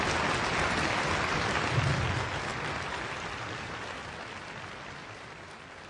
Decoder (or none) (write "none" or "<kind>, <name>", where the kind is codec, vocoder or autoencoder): none